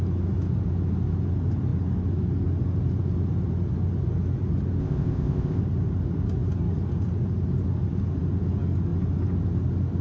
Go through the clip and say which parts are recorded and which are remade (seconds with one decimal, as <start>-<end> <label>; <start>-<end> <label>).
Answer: 0.0-4.8 recorded; 4.8-5.6 remade; 5.6-10.0 recorded